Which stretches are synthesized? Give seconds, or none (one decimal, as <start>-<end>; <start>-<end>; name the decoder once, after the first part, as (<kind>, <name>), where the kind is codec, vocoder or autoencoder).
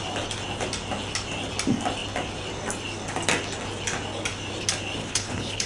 5.0-5.7 (codec, HILCodec)